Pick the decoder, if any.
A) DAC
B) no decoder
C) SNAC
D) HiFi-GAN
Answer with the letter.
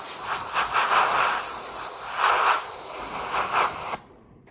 B